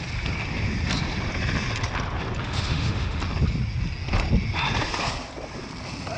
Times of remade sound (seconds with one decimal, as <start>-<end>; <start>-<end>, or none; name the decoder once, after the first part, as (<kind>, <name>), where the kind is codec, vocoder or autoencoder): 2.4-3.2 (autoencoder, DAC-VAE)